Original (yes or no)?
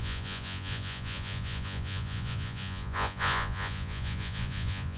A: no